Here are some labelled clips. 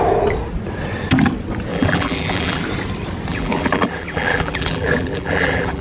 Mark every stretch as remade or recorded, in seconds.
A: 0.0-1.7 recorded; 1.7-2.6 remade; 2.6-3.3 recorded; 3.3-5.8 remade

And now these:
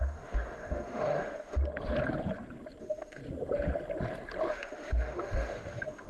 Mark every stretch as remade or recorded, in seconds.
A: 0.0-1.6 remade; 1.6-2.8 recorded; 2.8-3.2 remade; 3.2-4.5 recorded; 4.5-6.1 remade

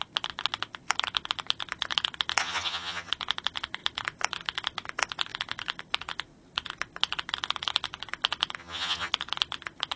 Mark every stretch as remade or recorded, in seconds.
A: 0.0-2.4 recorded; 2.4-3.1 remade; 3.1-8.6 recorded; 8.6-9.1 remade; 9.1-10.0 recorded

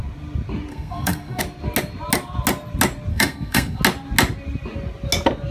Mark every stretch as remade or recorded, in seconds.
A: 0.0-0.7 recorded; 0.7-1.4 remade; 1.4-3.1 recorded; 3.1-3.8 remade; 3.8-5.5 recorded

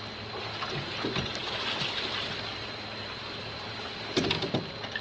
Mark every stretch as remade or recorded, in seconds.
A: 0.0-5.0 recorded

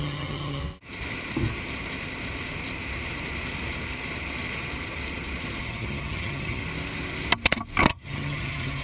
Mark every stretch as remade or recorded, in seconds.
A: 0.0-0.6 remade; 0.6-5.6 recorded; 5.6-6.6 remade; 6.6-7.9 recorded; 7.9-8.8 remade

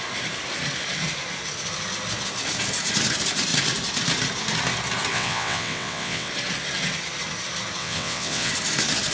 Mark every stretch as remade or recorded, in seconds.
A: 0.0-5.1 recorded; 5.1-6.3 remade; 6.3-7.8 recorded; 7.8-8.5 remade; 8.5-9.1 recorded

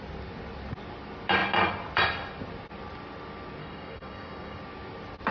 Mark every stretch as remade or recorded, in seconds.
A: 0.0-3.6 recorded; 3.6-4.6 remade; 4.6-5.3 recorded